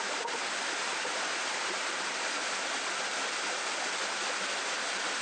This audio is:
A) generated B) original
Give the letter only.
B